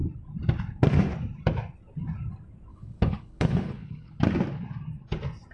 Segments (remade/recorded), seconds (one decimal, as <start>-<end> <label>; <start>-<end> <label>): 0.0-2.7 recorded; 2.7-4.2 remade; 4.2-5.5 recorded